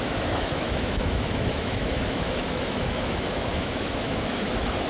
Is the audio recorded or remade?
remade